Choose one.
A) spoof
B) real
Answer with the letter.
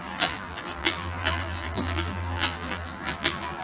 A